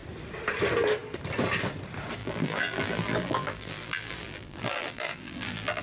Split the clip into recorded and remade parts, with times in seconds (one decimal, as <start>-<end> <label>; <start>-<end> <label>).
0.0-2.2 recorded; 2.2-5.8 remade